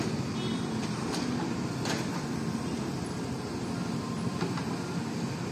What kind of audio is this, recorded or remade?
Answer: recorded